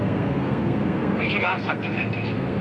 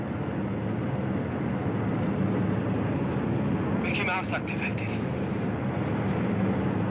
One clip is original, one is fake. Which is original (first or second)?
second